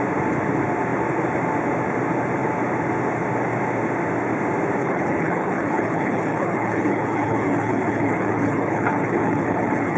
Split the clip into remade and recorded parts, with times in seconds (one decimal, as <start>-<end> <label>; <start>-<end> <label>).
0.0-4.8 recorded; 4.8-10.0 remade